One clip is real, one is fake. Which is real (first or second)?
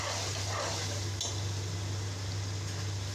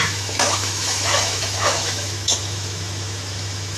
first